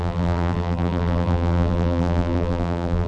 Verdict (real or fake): fake